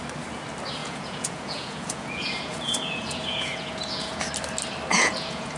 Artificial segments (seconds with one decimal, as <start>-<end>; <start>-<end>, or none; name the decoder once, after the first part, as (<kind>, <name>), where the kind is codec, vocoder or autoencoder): 0.8-4.2 (vocoder, Vocos); 4.9-5.6